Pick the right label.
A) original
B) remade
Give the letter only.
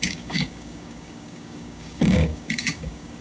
B